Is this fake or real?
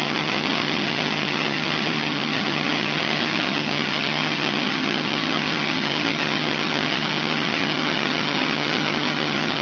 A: fake